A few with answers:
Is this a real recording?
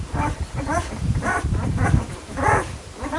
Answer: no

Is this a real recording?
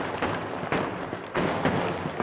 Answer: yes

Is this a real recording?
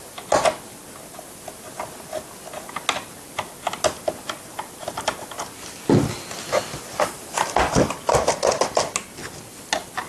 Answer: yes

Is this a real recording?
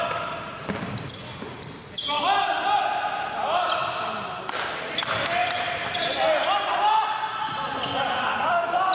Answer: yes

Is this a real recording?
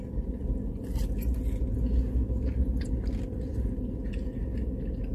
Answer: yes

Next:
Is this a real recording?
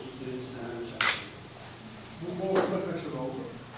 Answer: yes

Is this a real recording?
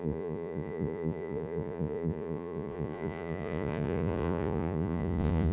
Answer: no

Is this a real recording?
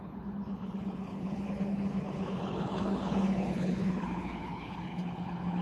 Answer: no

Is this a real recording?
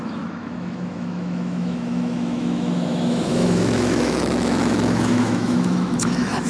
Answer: no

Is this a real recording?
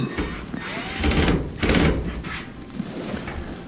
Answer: yes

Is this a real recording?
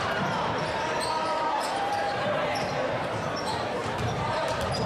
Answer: no